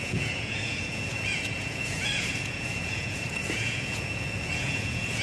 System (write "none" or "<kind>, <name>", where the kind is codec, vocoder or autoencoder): vocoder, Vocos